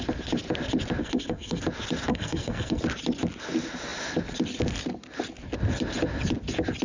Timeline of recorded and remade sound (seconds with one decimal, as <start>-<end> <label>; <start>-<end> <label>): 0.0-1.0 recorded; 1.0-1.6 remade; 1.6-2.1 recorded; 2.1-2.8 remade; 2.8-6.8 recorded